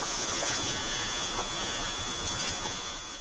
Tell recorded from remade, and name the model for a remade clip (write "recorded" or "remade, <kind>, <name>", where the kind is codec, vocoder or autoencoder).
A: remade, vocoder, Vocos